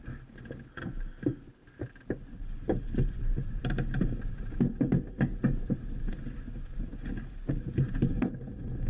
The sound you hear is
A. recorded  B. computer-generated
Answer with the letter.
A